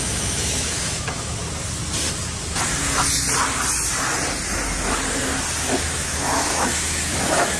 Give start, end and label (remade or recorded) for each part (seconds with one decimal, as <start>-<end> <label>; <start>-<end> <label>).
0.0-1.4 remade; 1.4-5.6 recorded; 5.6-7.6 remade